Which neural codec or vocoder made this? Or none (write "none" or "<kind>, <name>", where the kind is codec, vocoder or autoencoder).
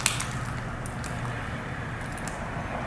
none